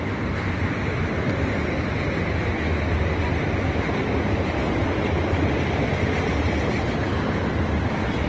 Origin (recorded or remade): recorded